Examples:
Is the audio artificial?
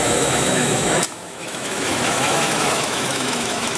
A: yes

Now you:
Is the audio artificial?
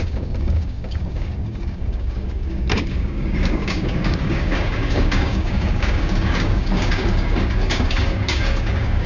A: yes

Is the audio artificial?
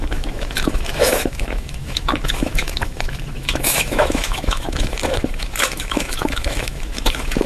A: yes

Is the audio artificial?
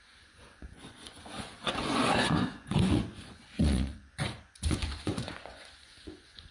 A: yes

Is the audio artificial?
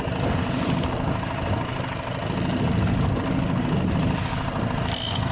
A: no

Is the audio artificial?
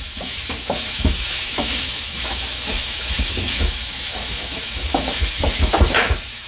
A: yes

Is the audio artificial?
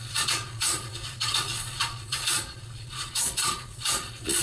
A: yes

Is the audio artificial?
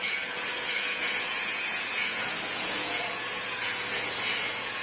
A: yes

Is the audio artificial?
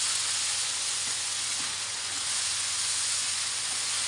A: yes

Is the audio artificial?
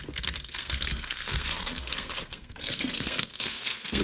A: yes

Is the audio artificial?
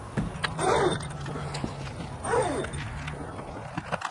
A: no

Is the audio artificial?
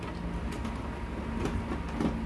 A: no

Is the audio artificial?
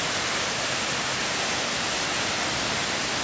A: no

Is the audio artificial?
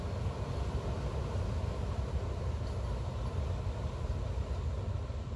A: no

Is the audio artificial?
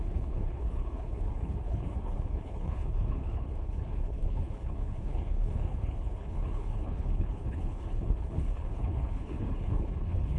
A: yes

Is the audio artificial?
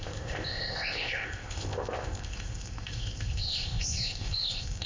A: yes